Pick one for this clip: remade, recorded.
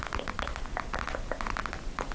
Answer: recorded